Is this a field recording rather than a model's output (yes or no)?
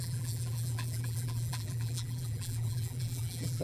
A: no